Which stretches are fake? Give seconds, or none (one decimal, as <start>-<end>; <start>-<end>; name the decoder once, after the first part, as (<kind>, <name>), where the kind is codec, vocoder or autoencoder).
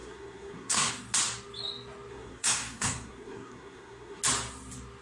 0.0-0.9 (codec, SNAC); 2.1-4.2